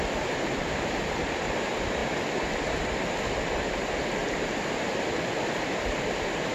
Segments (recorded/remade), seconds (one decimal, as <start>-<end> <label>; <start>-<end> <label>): 0.0-6.5 recorded

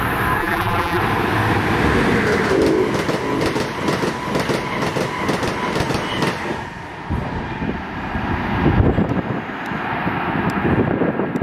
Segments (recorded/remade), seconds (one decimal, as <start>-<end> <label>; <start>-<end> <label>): 0.0-0.4 recorded; 0.4-1.0 remade; 1.0-11.4 recorded